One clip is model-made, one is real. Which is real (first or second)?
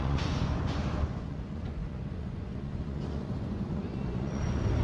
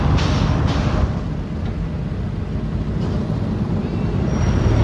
second